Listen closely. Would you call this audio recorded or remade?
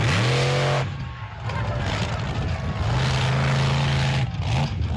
recorded